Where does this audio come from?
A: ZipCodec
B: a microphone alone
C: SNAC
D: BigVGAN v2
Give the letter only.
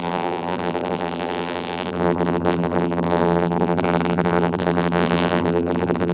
D